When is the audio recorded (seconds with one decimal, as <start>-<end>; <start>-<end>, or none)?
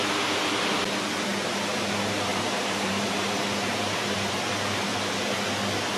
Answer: 0.0-2.3; 4.3-4.9; 5.4-6.0